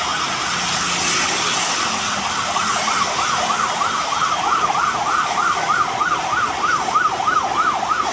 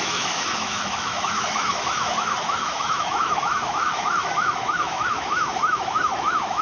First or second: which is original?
first